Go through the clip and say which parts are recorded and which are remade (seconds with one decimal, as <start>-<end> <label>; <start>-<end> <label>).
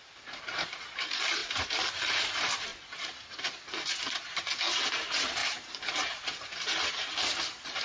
0.0-7.8 remade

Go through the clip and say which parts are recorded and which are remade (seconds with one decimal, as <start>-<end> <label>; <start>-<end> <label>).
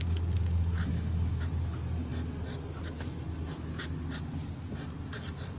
0.0-0.9 recorded; 0.9-1.5 remade; 1.5-5.6 recorded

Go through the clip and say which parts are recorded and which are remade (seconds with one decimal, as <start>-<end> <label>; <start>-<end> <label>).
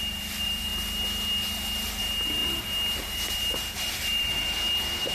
0.0-0.7 remade; 0.7-2.0 recorded; 2.0-5.1 remade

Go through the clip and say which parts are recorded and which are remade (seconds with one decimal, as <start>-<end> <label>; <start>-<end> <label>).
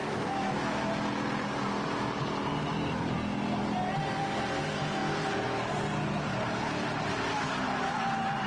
0.0-0.9 remade; 0.9-8.5 recorded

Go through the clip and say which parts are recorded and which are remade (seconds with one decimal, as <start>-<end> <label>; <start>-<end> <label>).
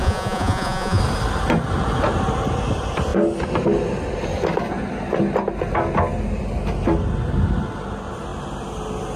0.0-1.0 remade; 1.0-9.2 recorded